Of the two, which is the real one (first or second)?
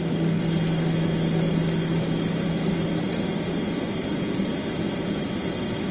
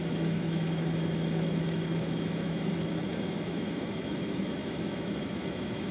first